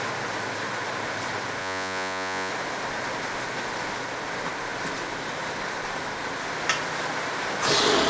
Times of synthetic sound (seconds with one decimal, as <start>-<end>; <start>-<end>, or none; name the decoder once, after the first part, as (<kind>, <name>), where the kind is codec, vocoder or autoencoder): 1.6-2.5 (vocoder, Vocos)